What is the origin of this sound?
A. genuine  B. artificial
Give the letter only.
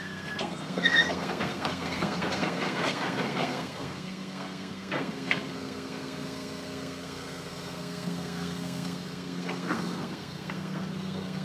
B